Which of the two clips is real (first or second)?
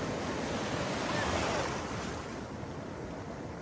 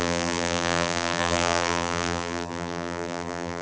first